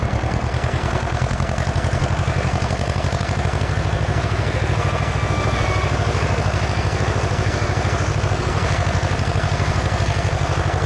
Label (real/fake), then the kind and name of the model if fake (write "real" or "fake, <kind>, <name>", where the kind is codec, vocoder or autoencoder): fake, codec, SNAC